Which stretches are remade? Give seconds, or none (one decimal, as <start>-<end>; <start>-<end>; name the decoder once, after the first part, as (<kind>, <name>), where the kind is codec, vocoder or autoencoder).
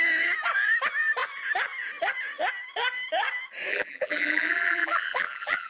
3.7-5.7 (vocoder, BigVGAN v2)